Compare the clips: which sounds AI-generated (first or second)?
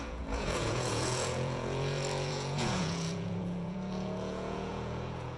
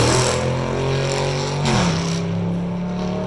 first